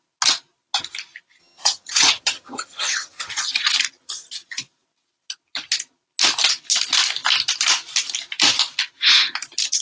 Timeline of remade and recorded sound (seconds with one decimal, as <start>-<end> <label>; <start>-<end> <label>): 0.0-1.4 recorded; 1.4-3.3 remade; 3.3-9.8 recorded